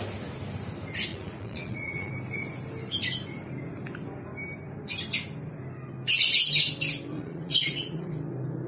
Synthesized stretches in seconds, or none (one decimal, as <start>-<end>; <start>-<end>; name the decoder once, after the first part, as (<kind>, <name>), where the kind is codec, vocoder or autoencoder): 1.1-2.1 (vocoder, Vocos); 7.1-8.1